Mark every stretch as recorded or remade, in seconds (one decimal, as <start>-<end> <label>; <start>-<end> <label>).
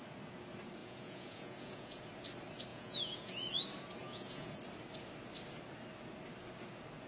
0.0-0.8 recorded; 0.8-2.0 remade; 2.0-2.7 recorded; 2.7-3.6 remade; 3.6-4.0 recorded; 4.0-4.6 remade; 4.6-7.1 recorded